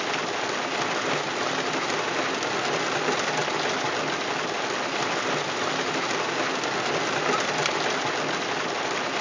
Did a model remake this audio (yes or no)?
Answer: no